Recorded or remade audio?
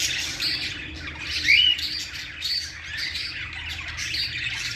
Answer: recorded